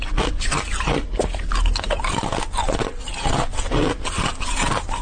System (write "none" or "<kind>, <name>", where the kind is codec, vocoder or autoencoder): none